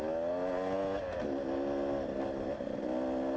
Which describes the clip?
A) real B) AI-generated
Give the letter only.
A